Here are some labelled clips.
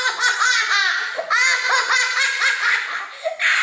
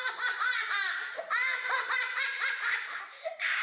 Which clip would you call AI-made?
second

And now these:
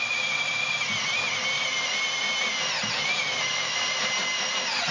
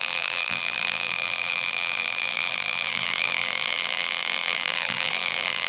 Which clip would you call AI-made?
second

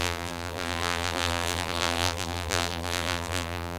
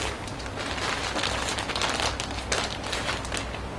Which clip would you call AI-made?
first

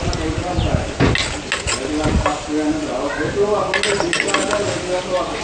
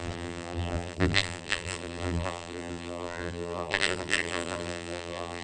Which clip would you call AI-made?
second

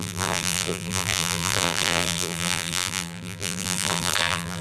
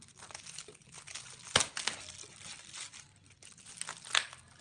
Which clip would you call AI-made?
first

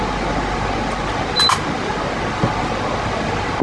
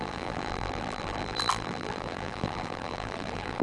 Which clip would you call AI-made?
second